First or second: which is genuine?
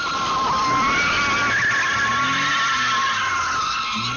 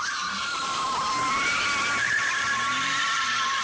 first